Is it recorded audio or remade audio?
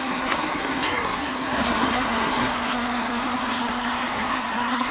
remade